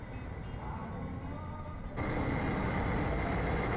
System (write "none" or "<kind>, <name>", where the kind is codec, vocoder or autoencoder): none